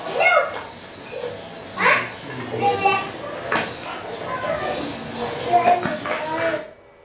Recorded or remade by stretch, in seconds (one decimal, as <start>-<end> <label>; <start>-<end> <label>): 0.0-7.0 recorded